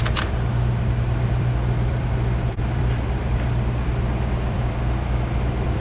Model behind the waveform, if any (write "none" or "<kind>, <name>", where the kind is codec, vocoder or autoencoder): vocoder, BigVGAN v2